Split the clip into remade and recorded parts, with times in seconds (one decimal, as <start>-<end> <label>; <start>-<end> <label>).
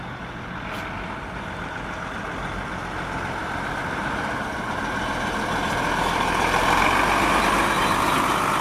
0.0-3.4 recorded; 3.4-5.0 remade; 5.0-8.6 recorded